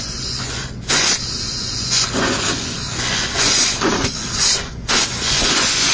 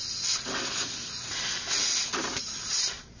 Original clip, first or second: second